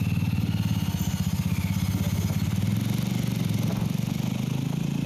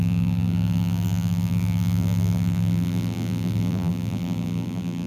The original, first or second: first